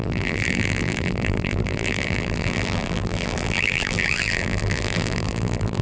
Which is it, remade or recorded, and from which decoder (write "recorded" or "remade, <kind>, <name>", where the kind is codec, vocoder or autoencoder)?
remade, vocoder, BigVGAN v2